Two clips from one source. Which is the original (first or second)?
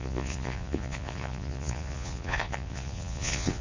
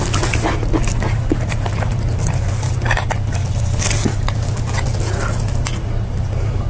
second